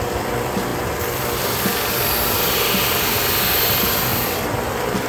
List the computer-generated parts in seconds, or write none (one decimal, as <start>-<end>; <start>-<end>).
0.7-1.6; 4.1-5.1